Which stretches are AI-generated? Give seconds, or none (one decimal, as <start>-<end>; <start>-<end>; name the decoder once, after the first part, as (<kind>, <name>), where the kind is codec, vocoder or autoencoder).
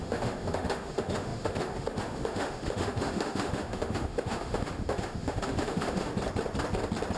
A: 0.0-6.1 (autoencoder, DAC-VAE)